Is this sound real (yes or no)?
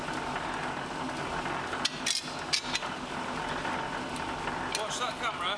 yes